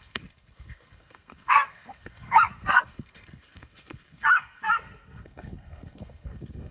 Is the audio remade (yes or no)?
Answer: yes